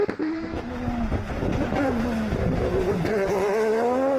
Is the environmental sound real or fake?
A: real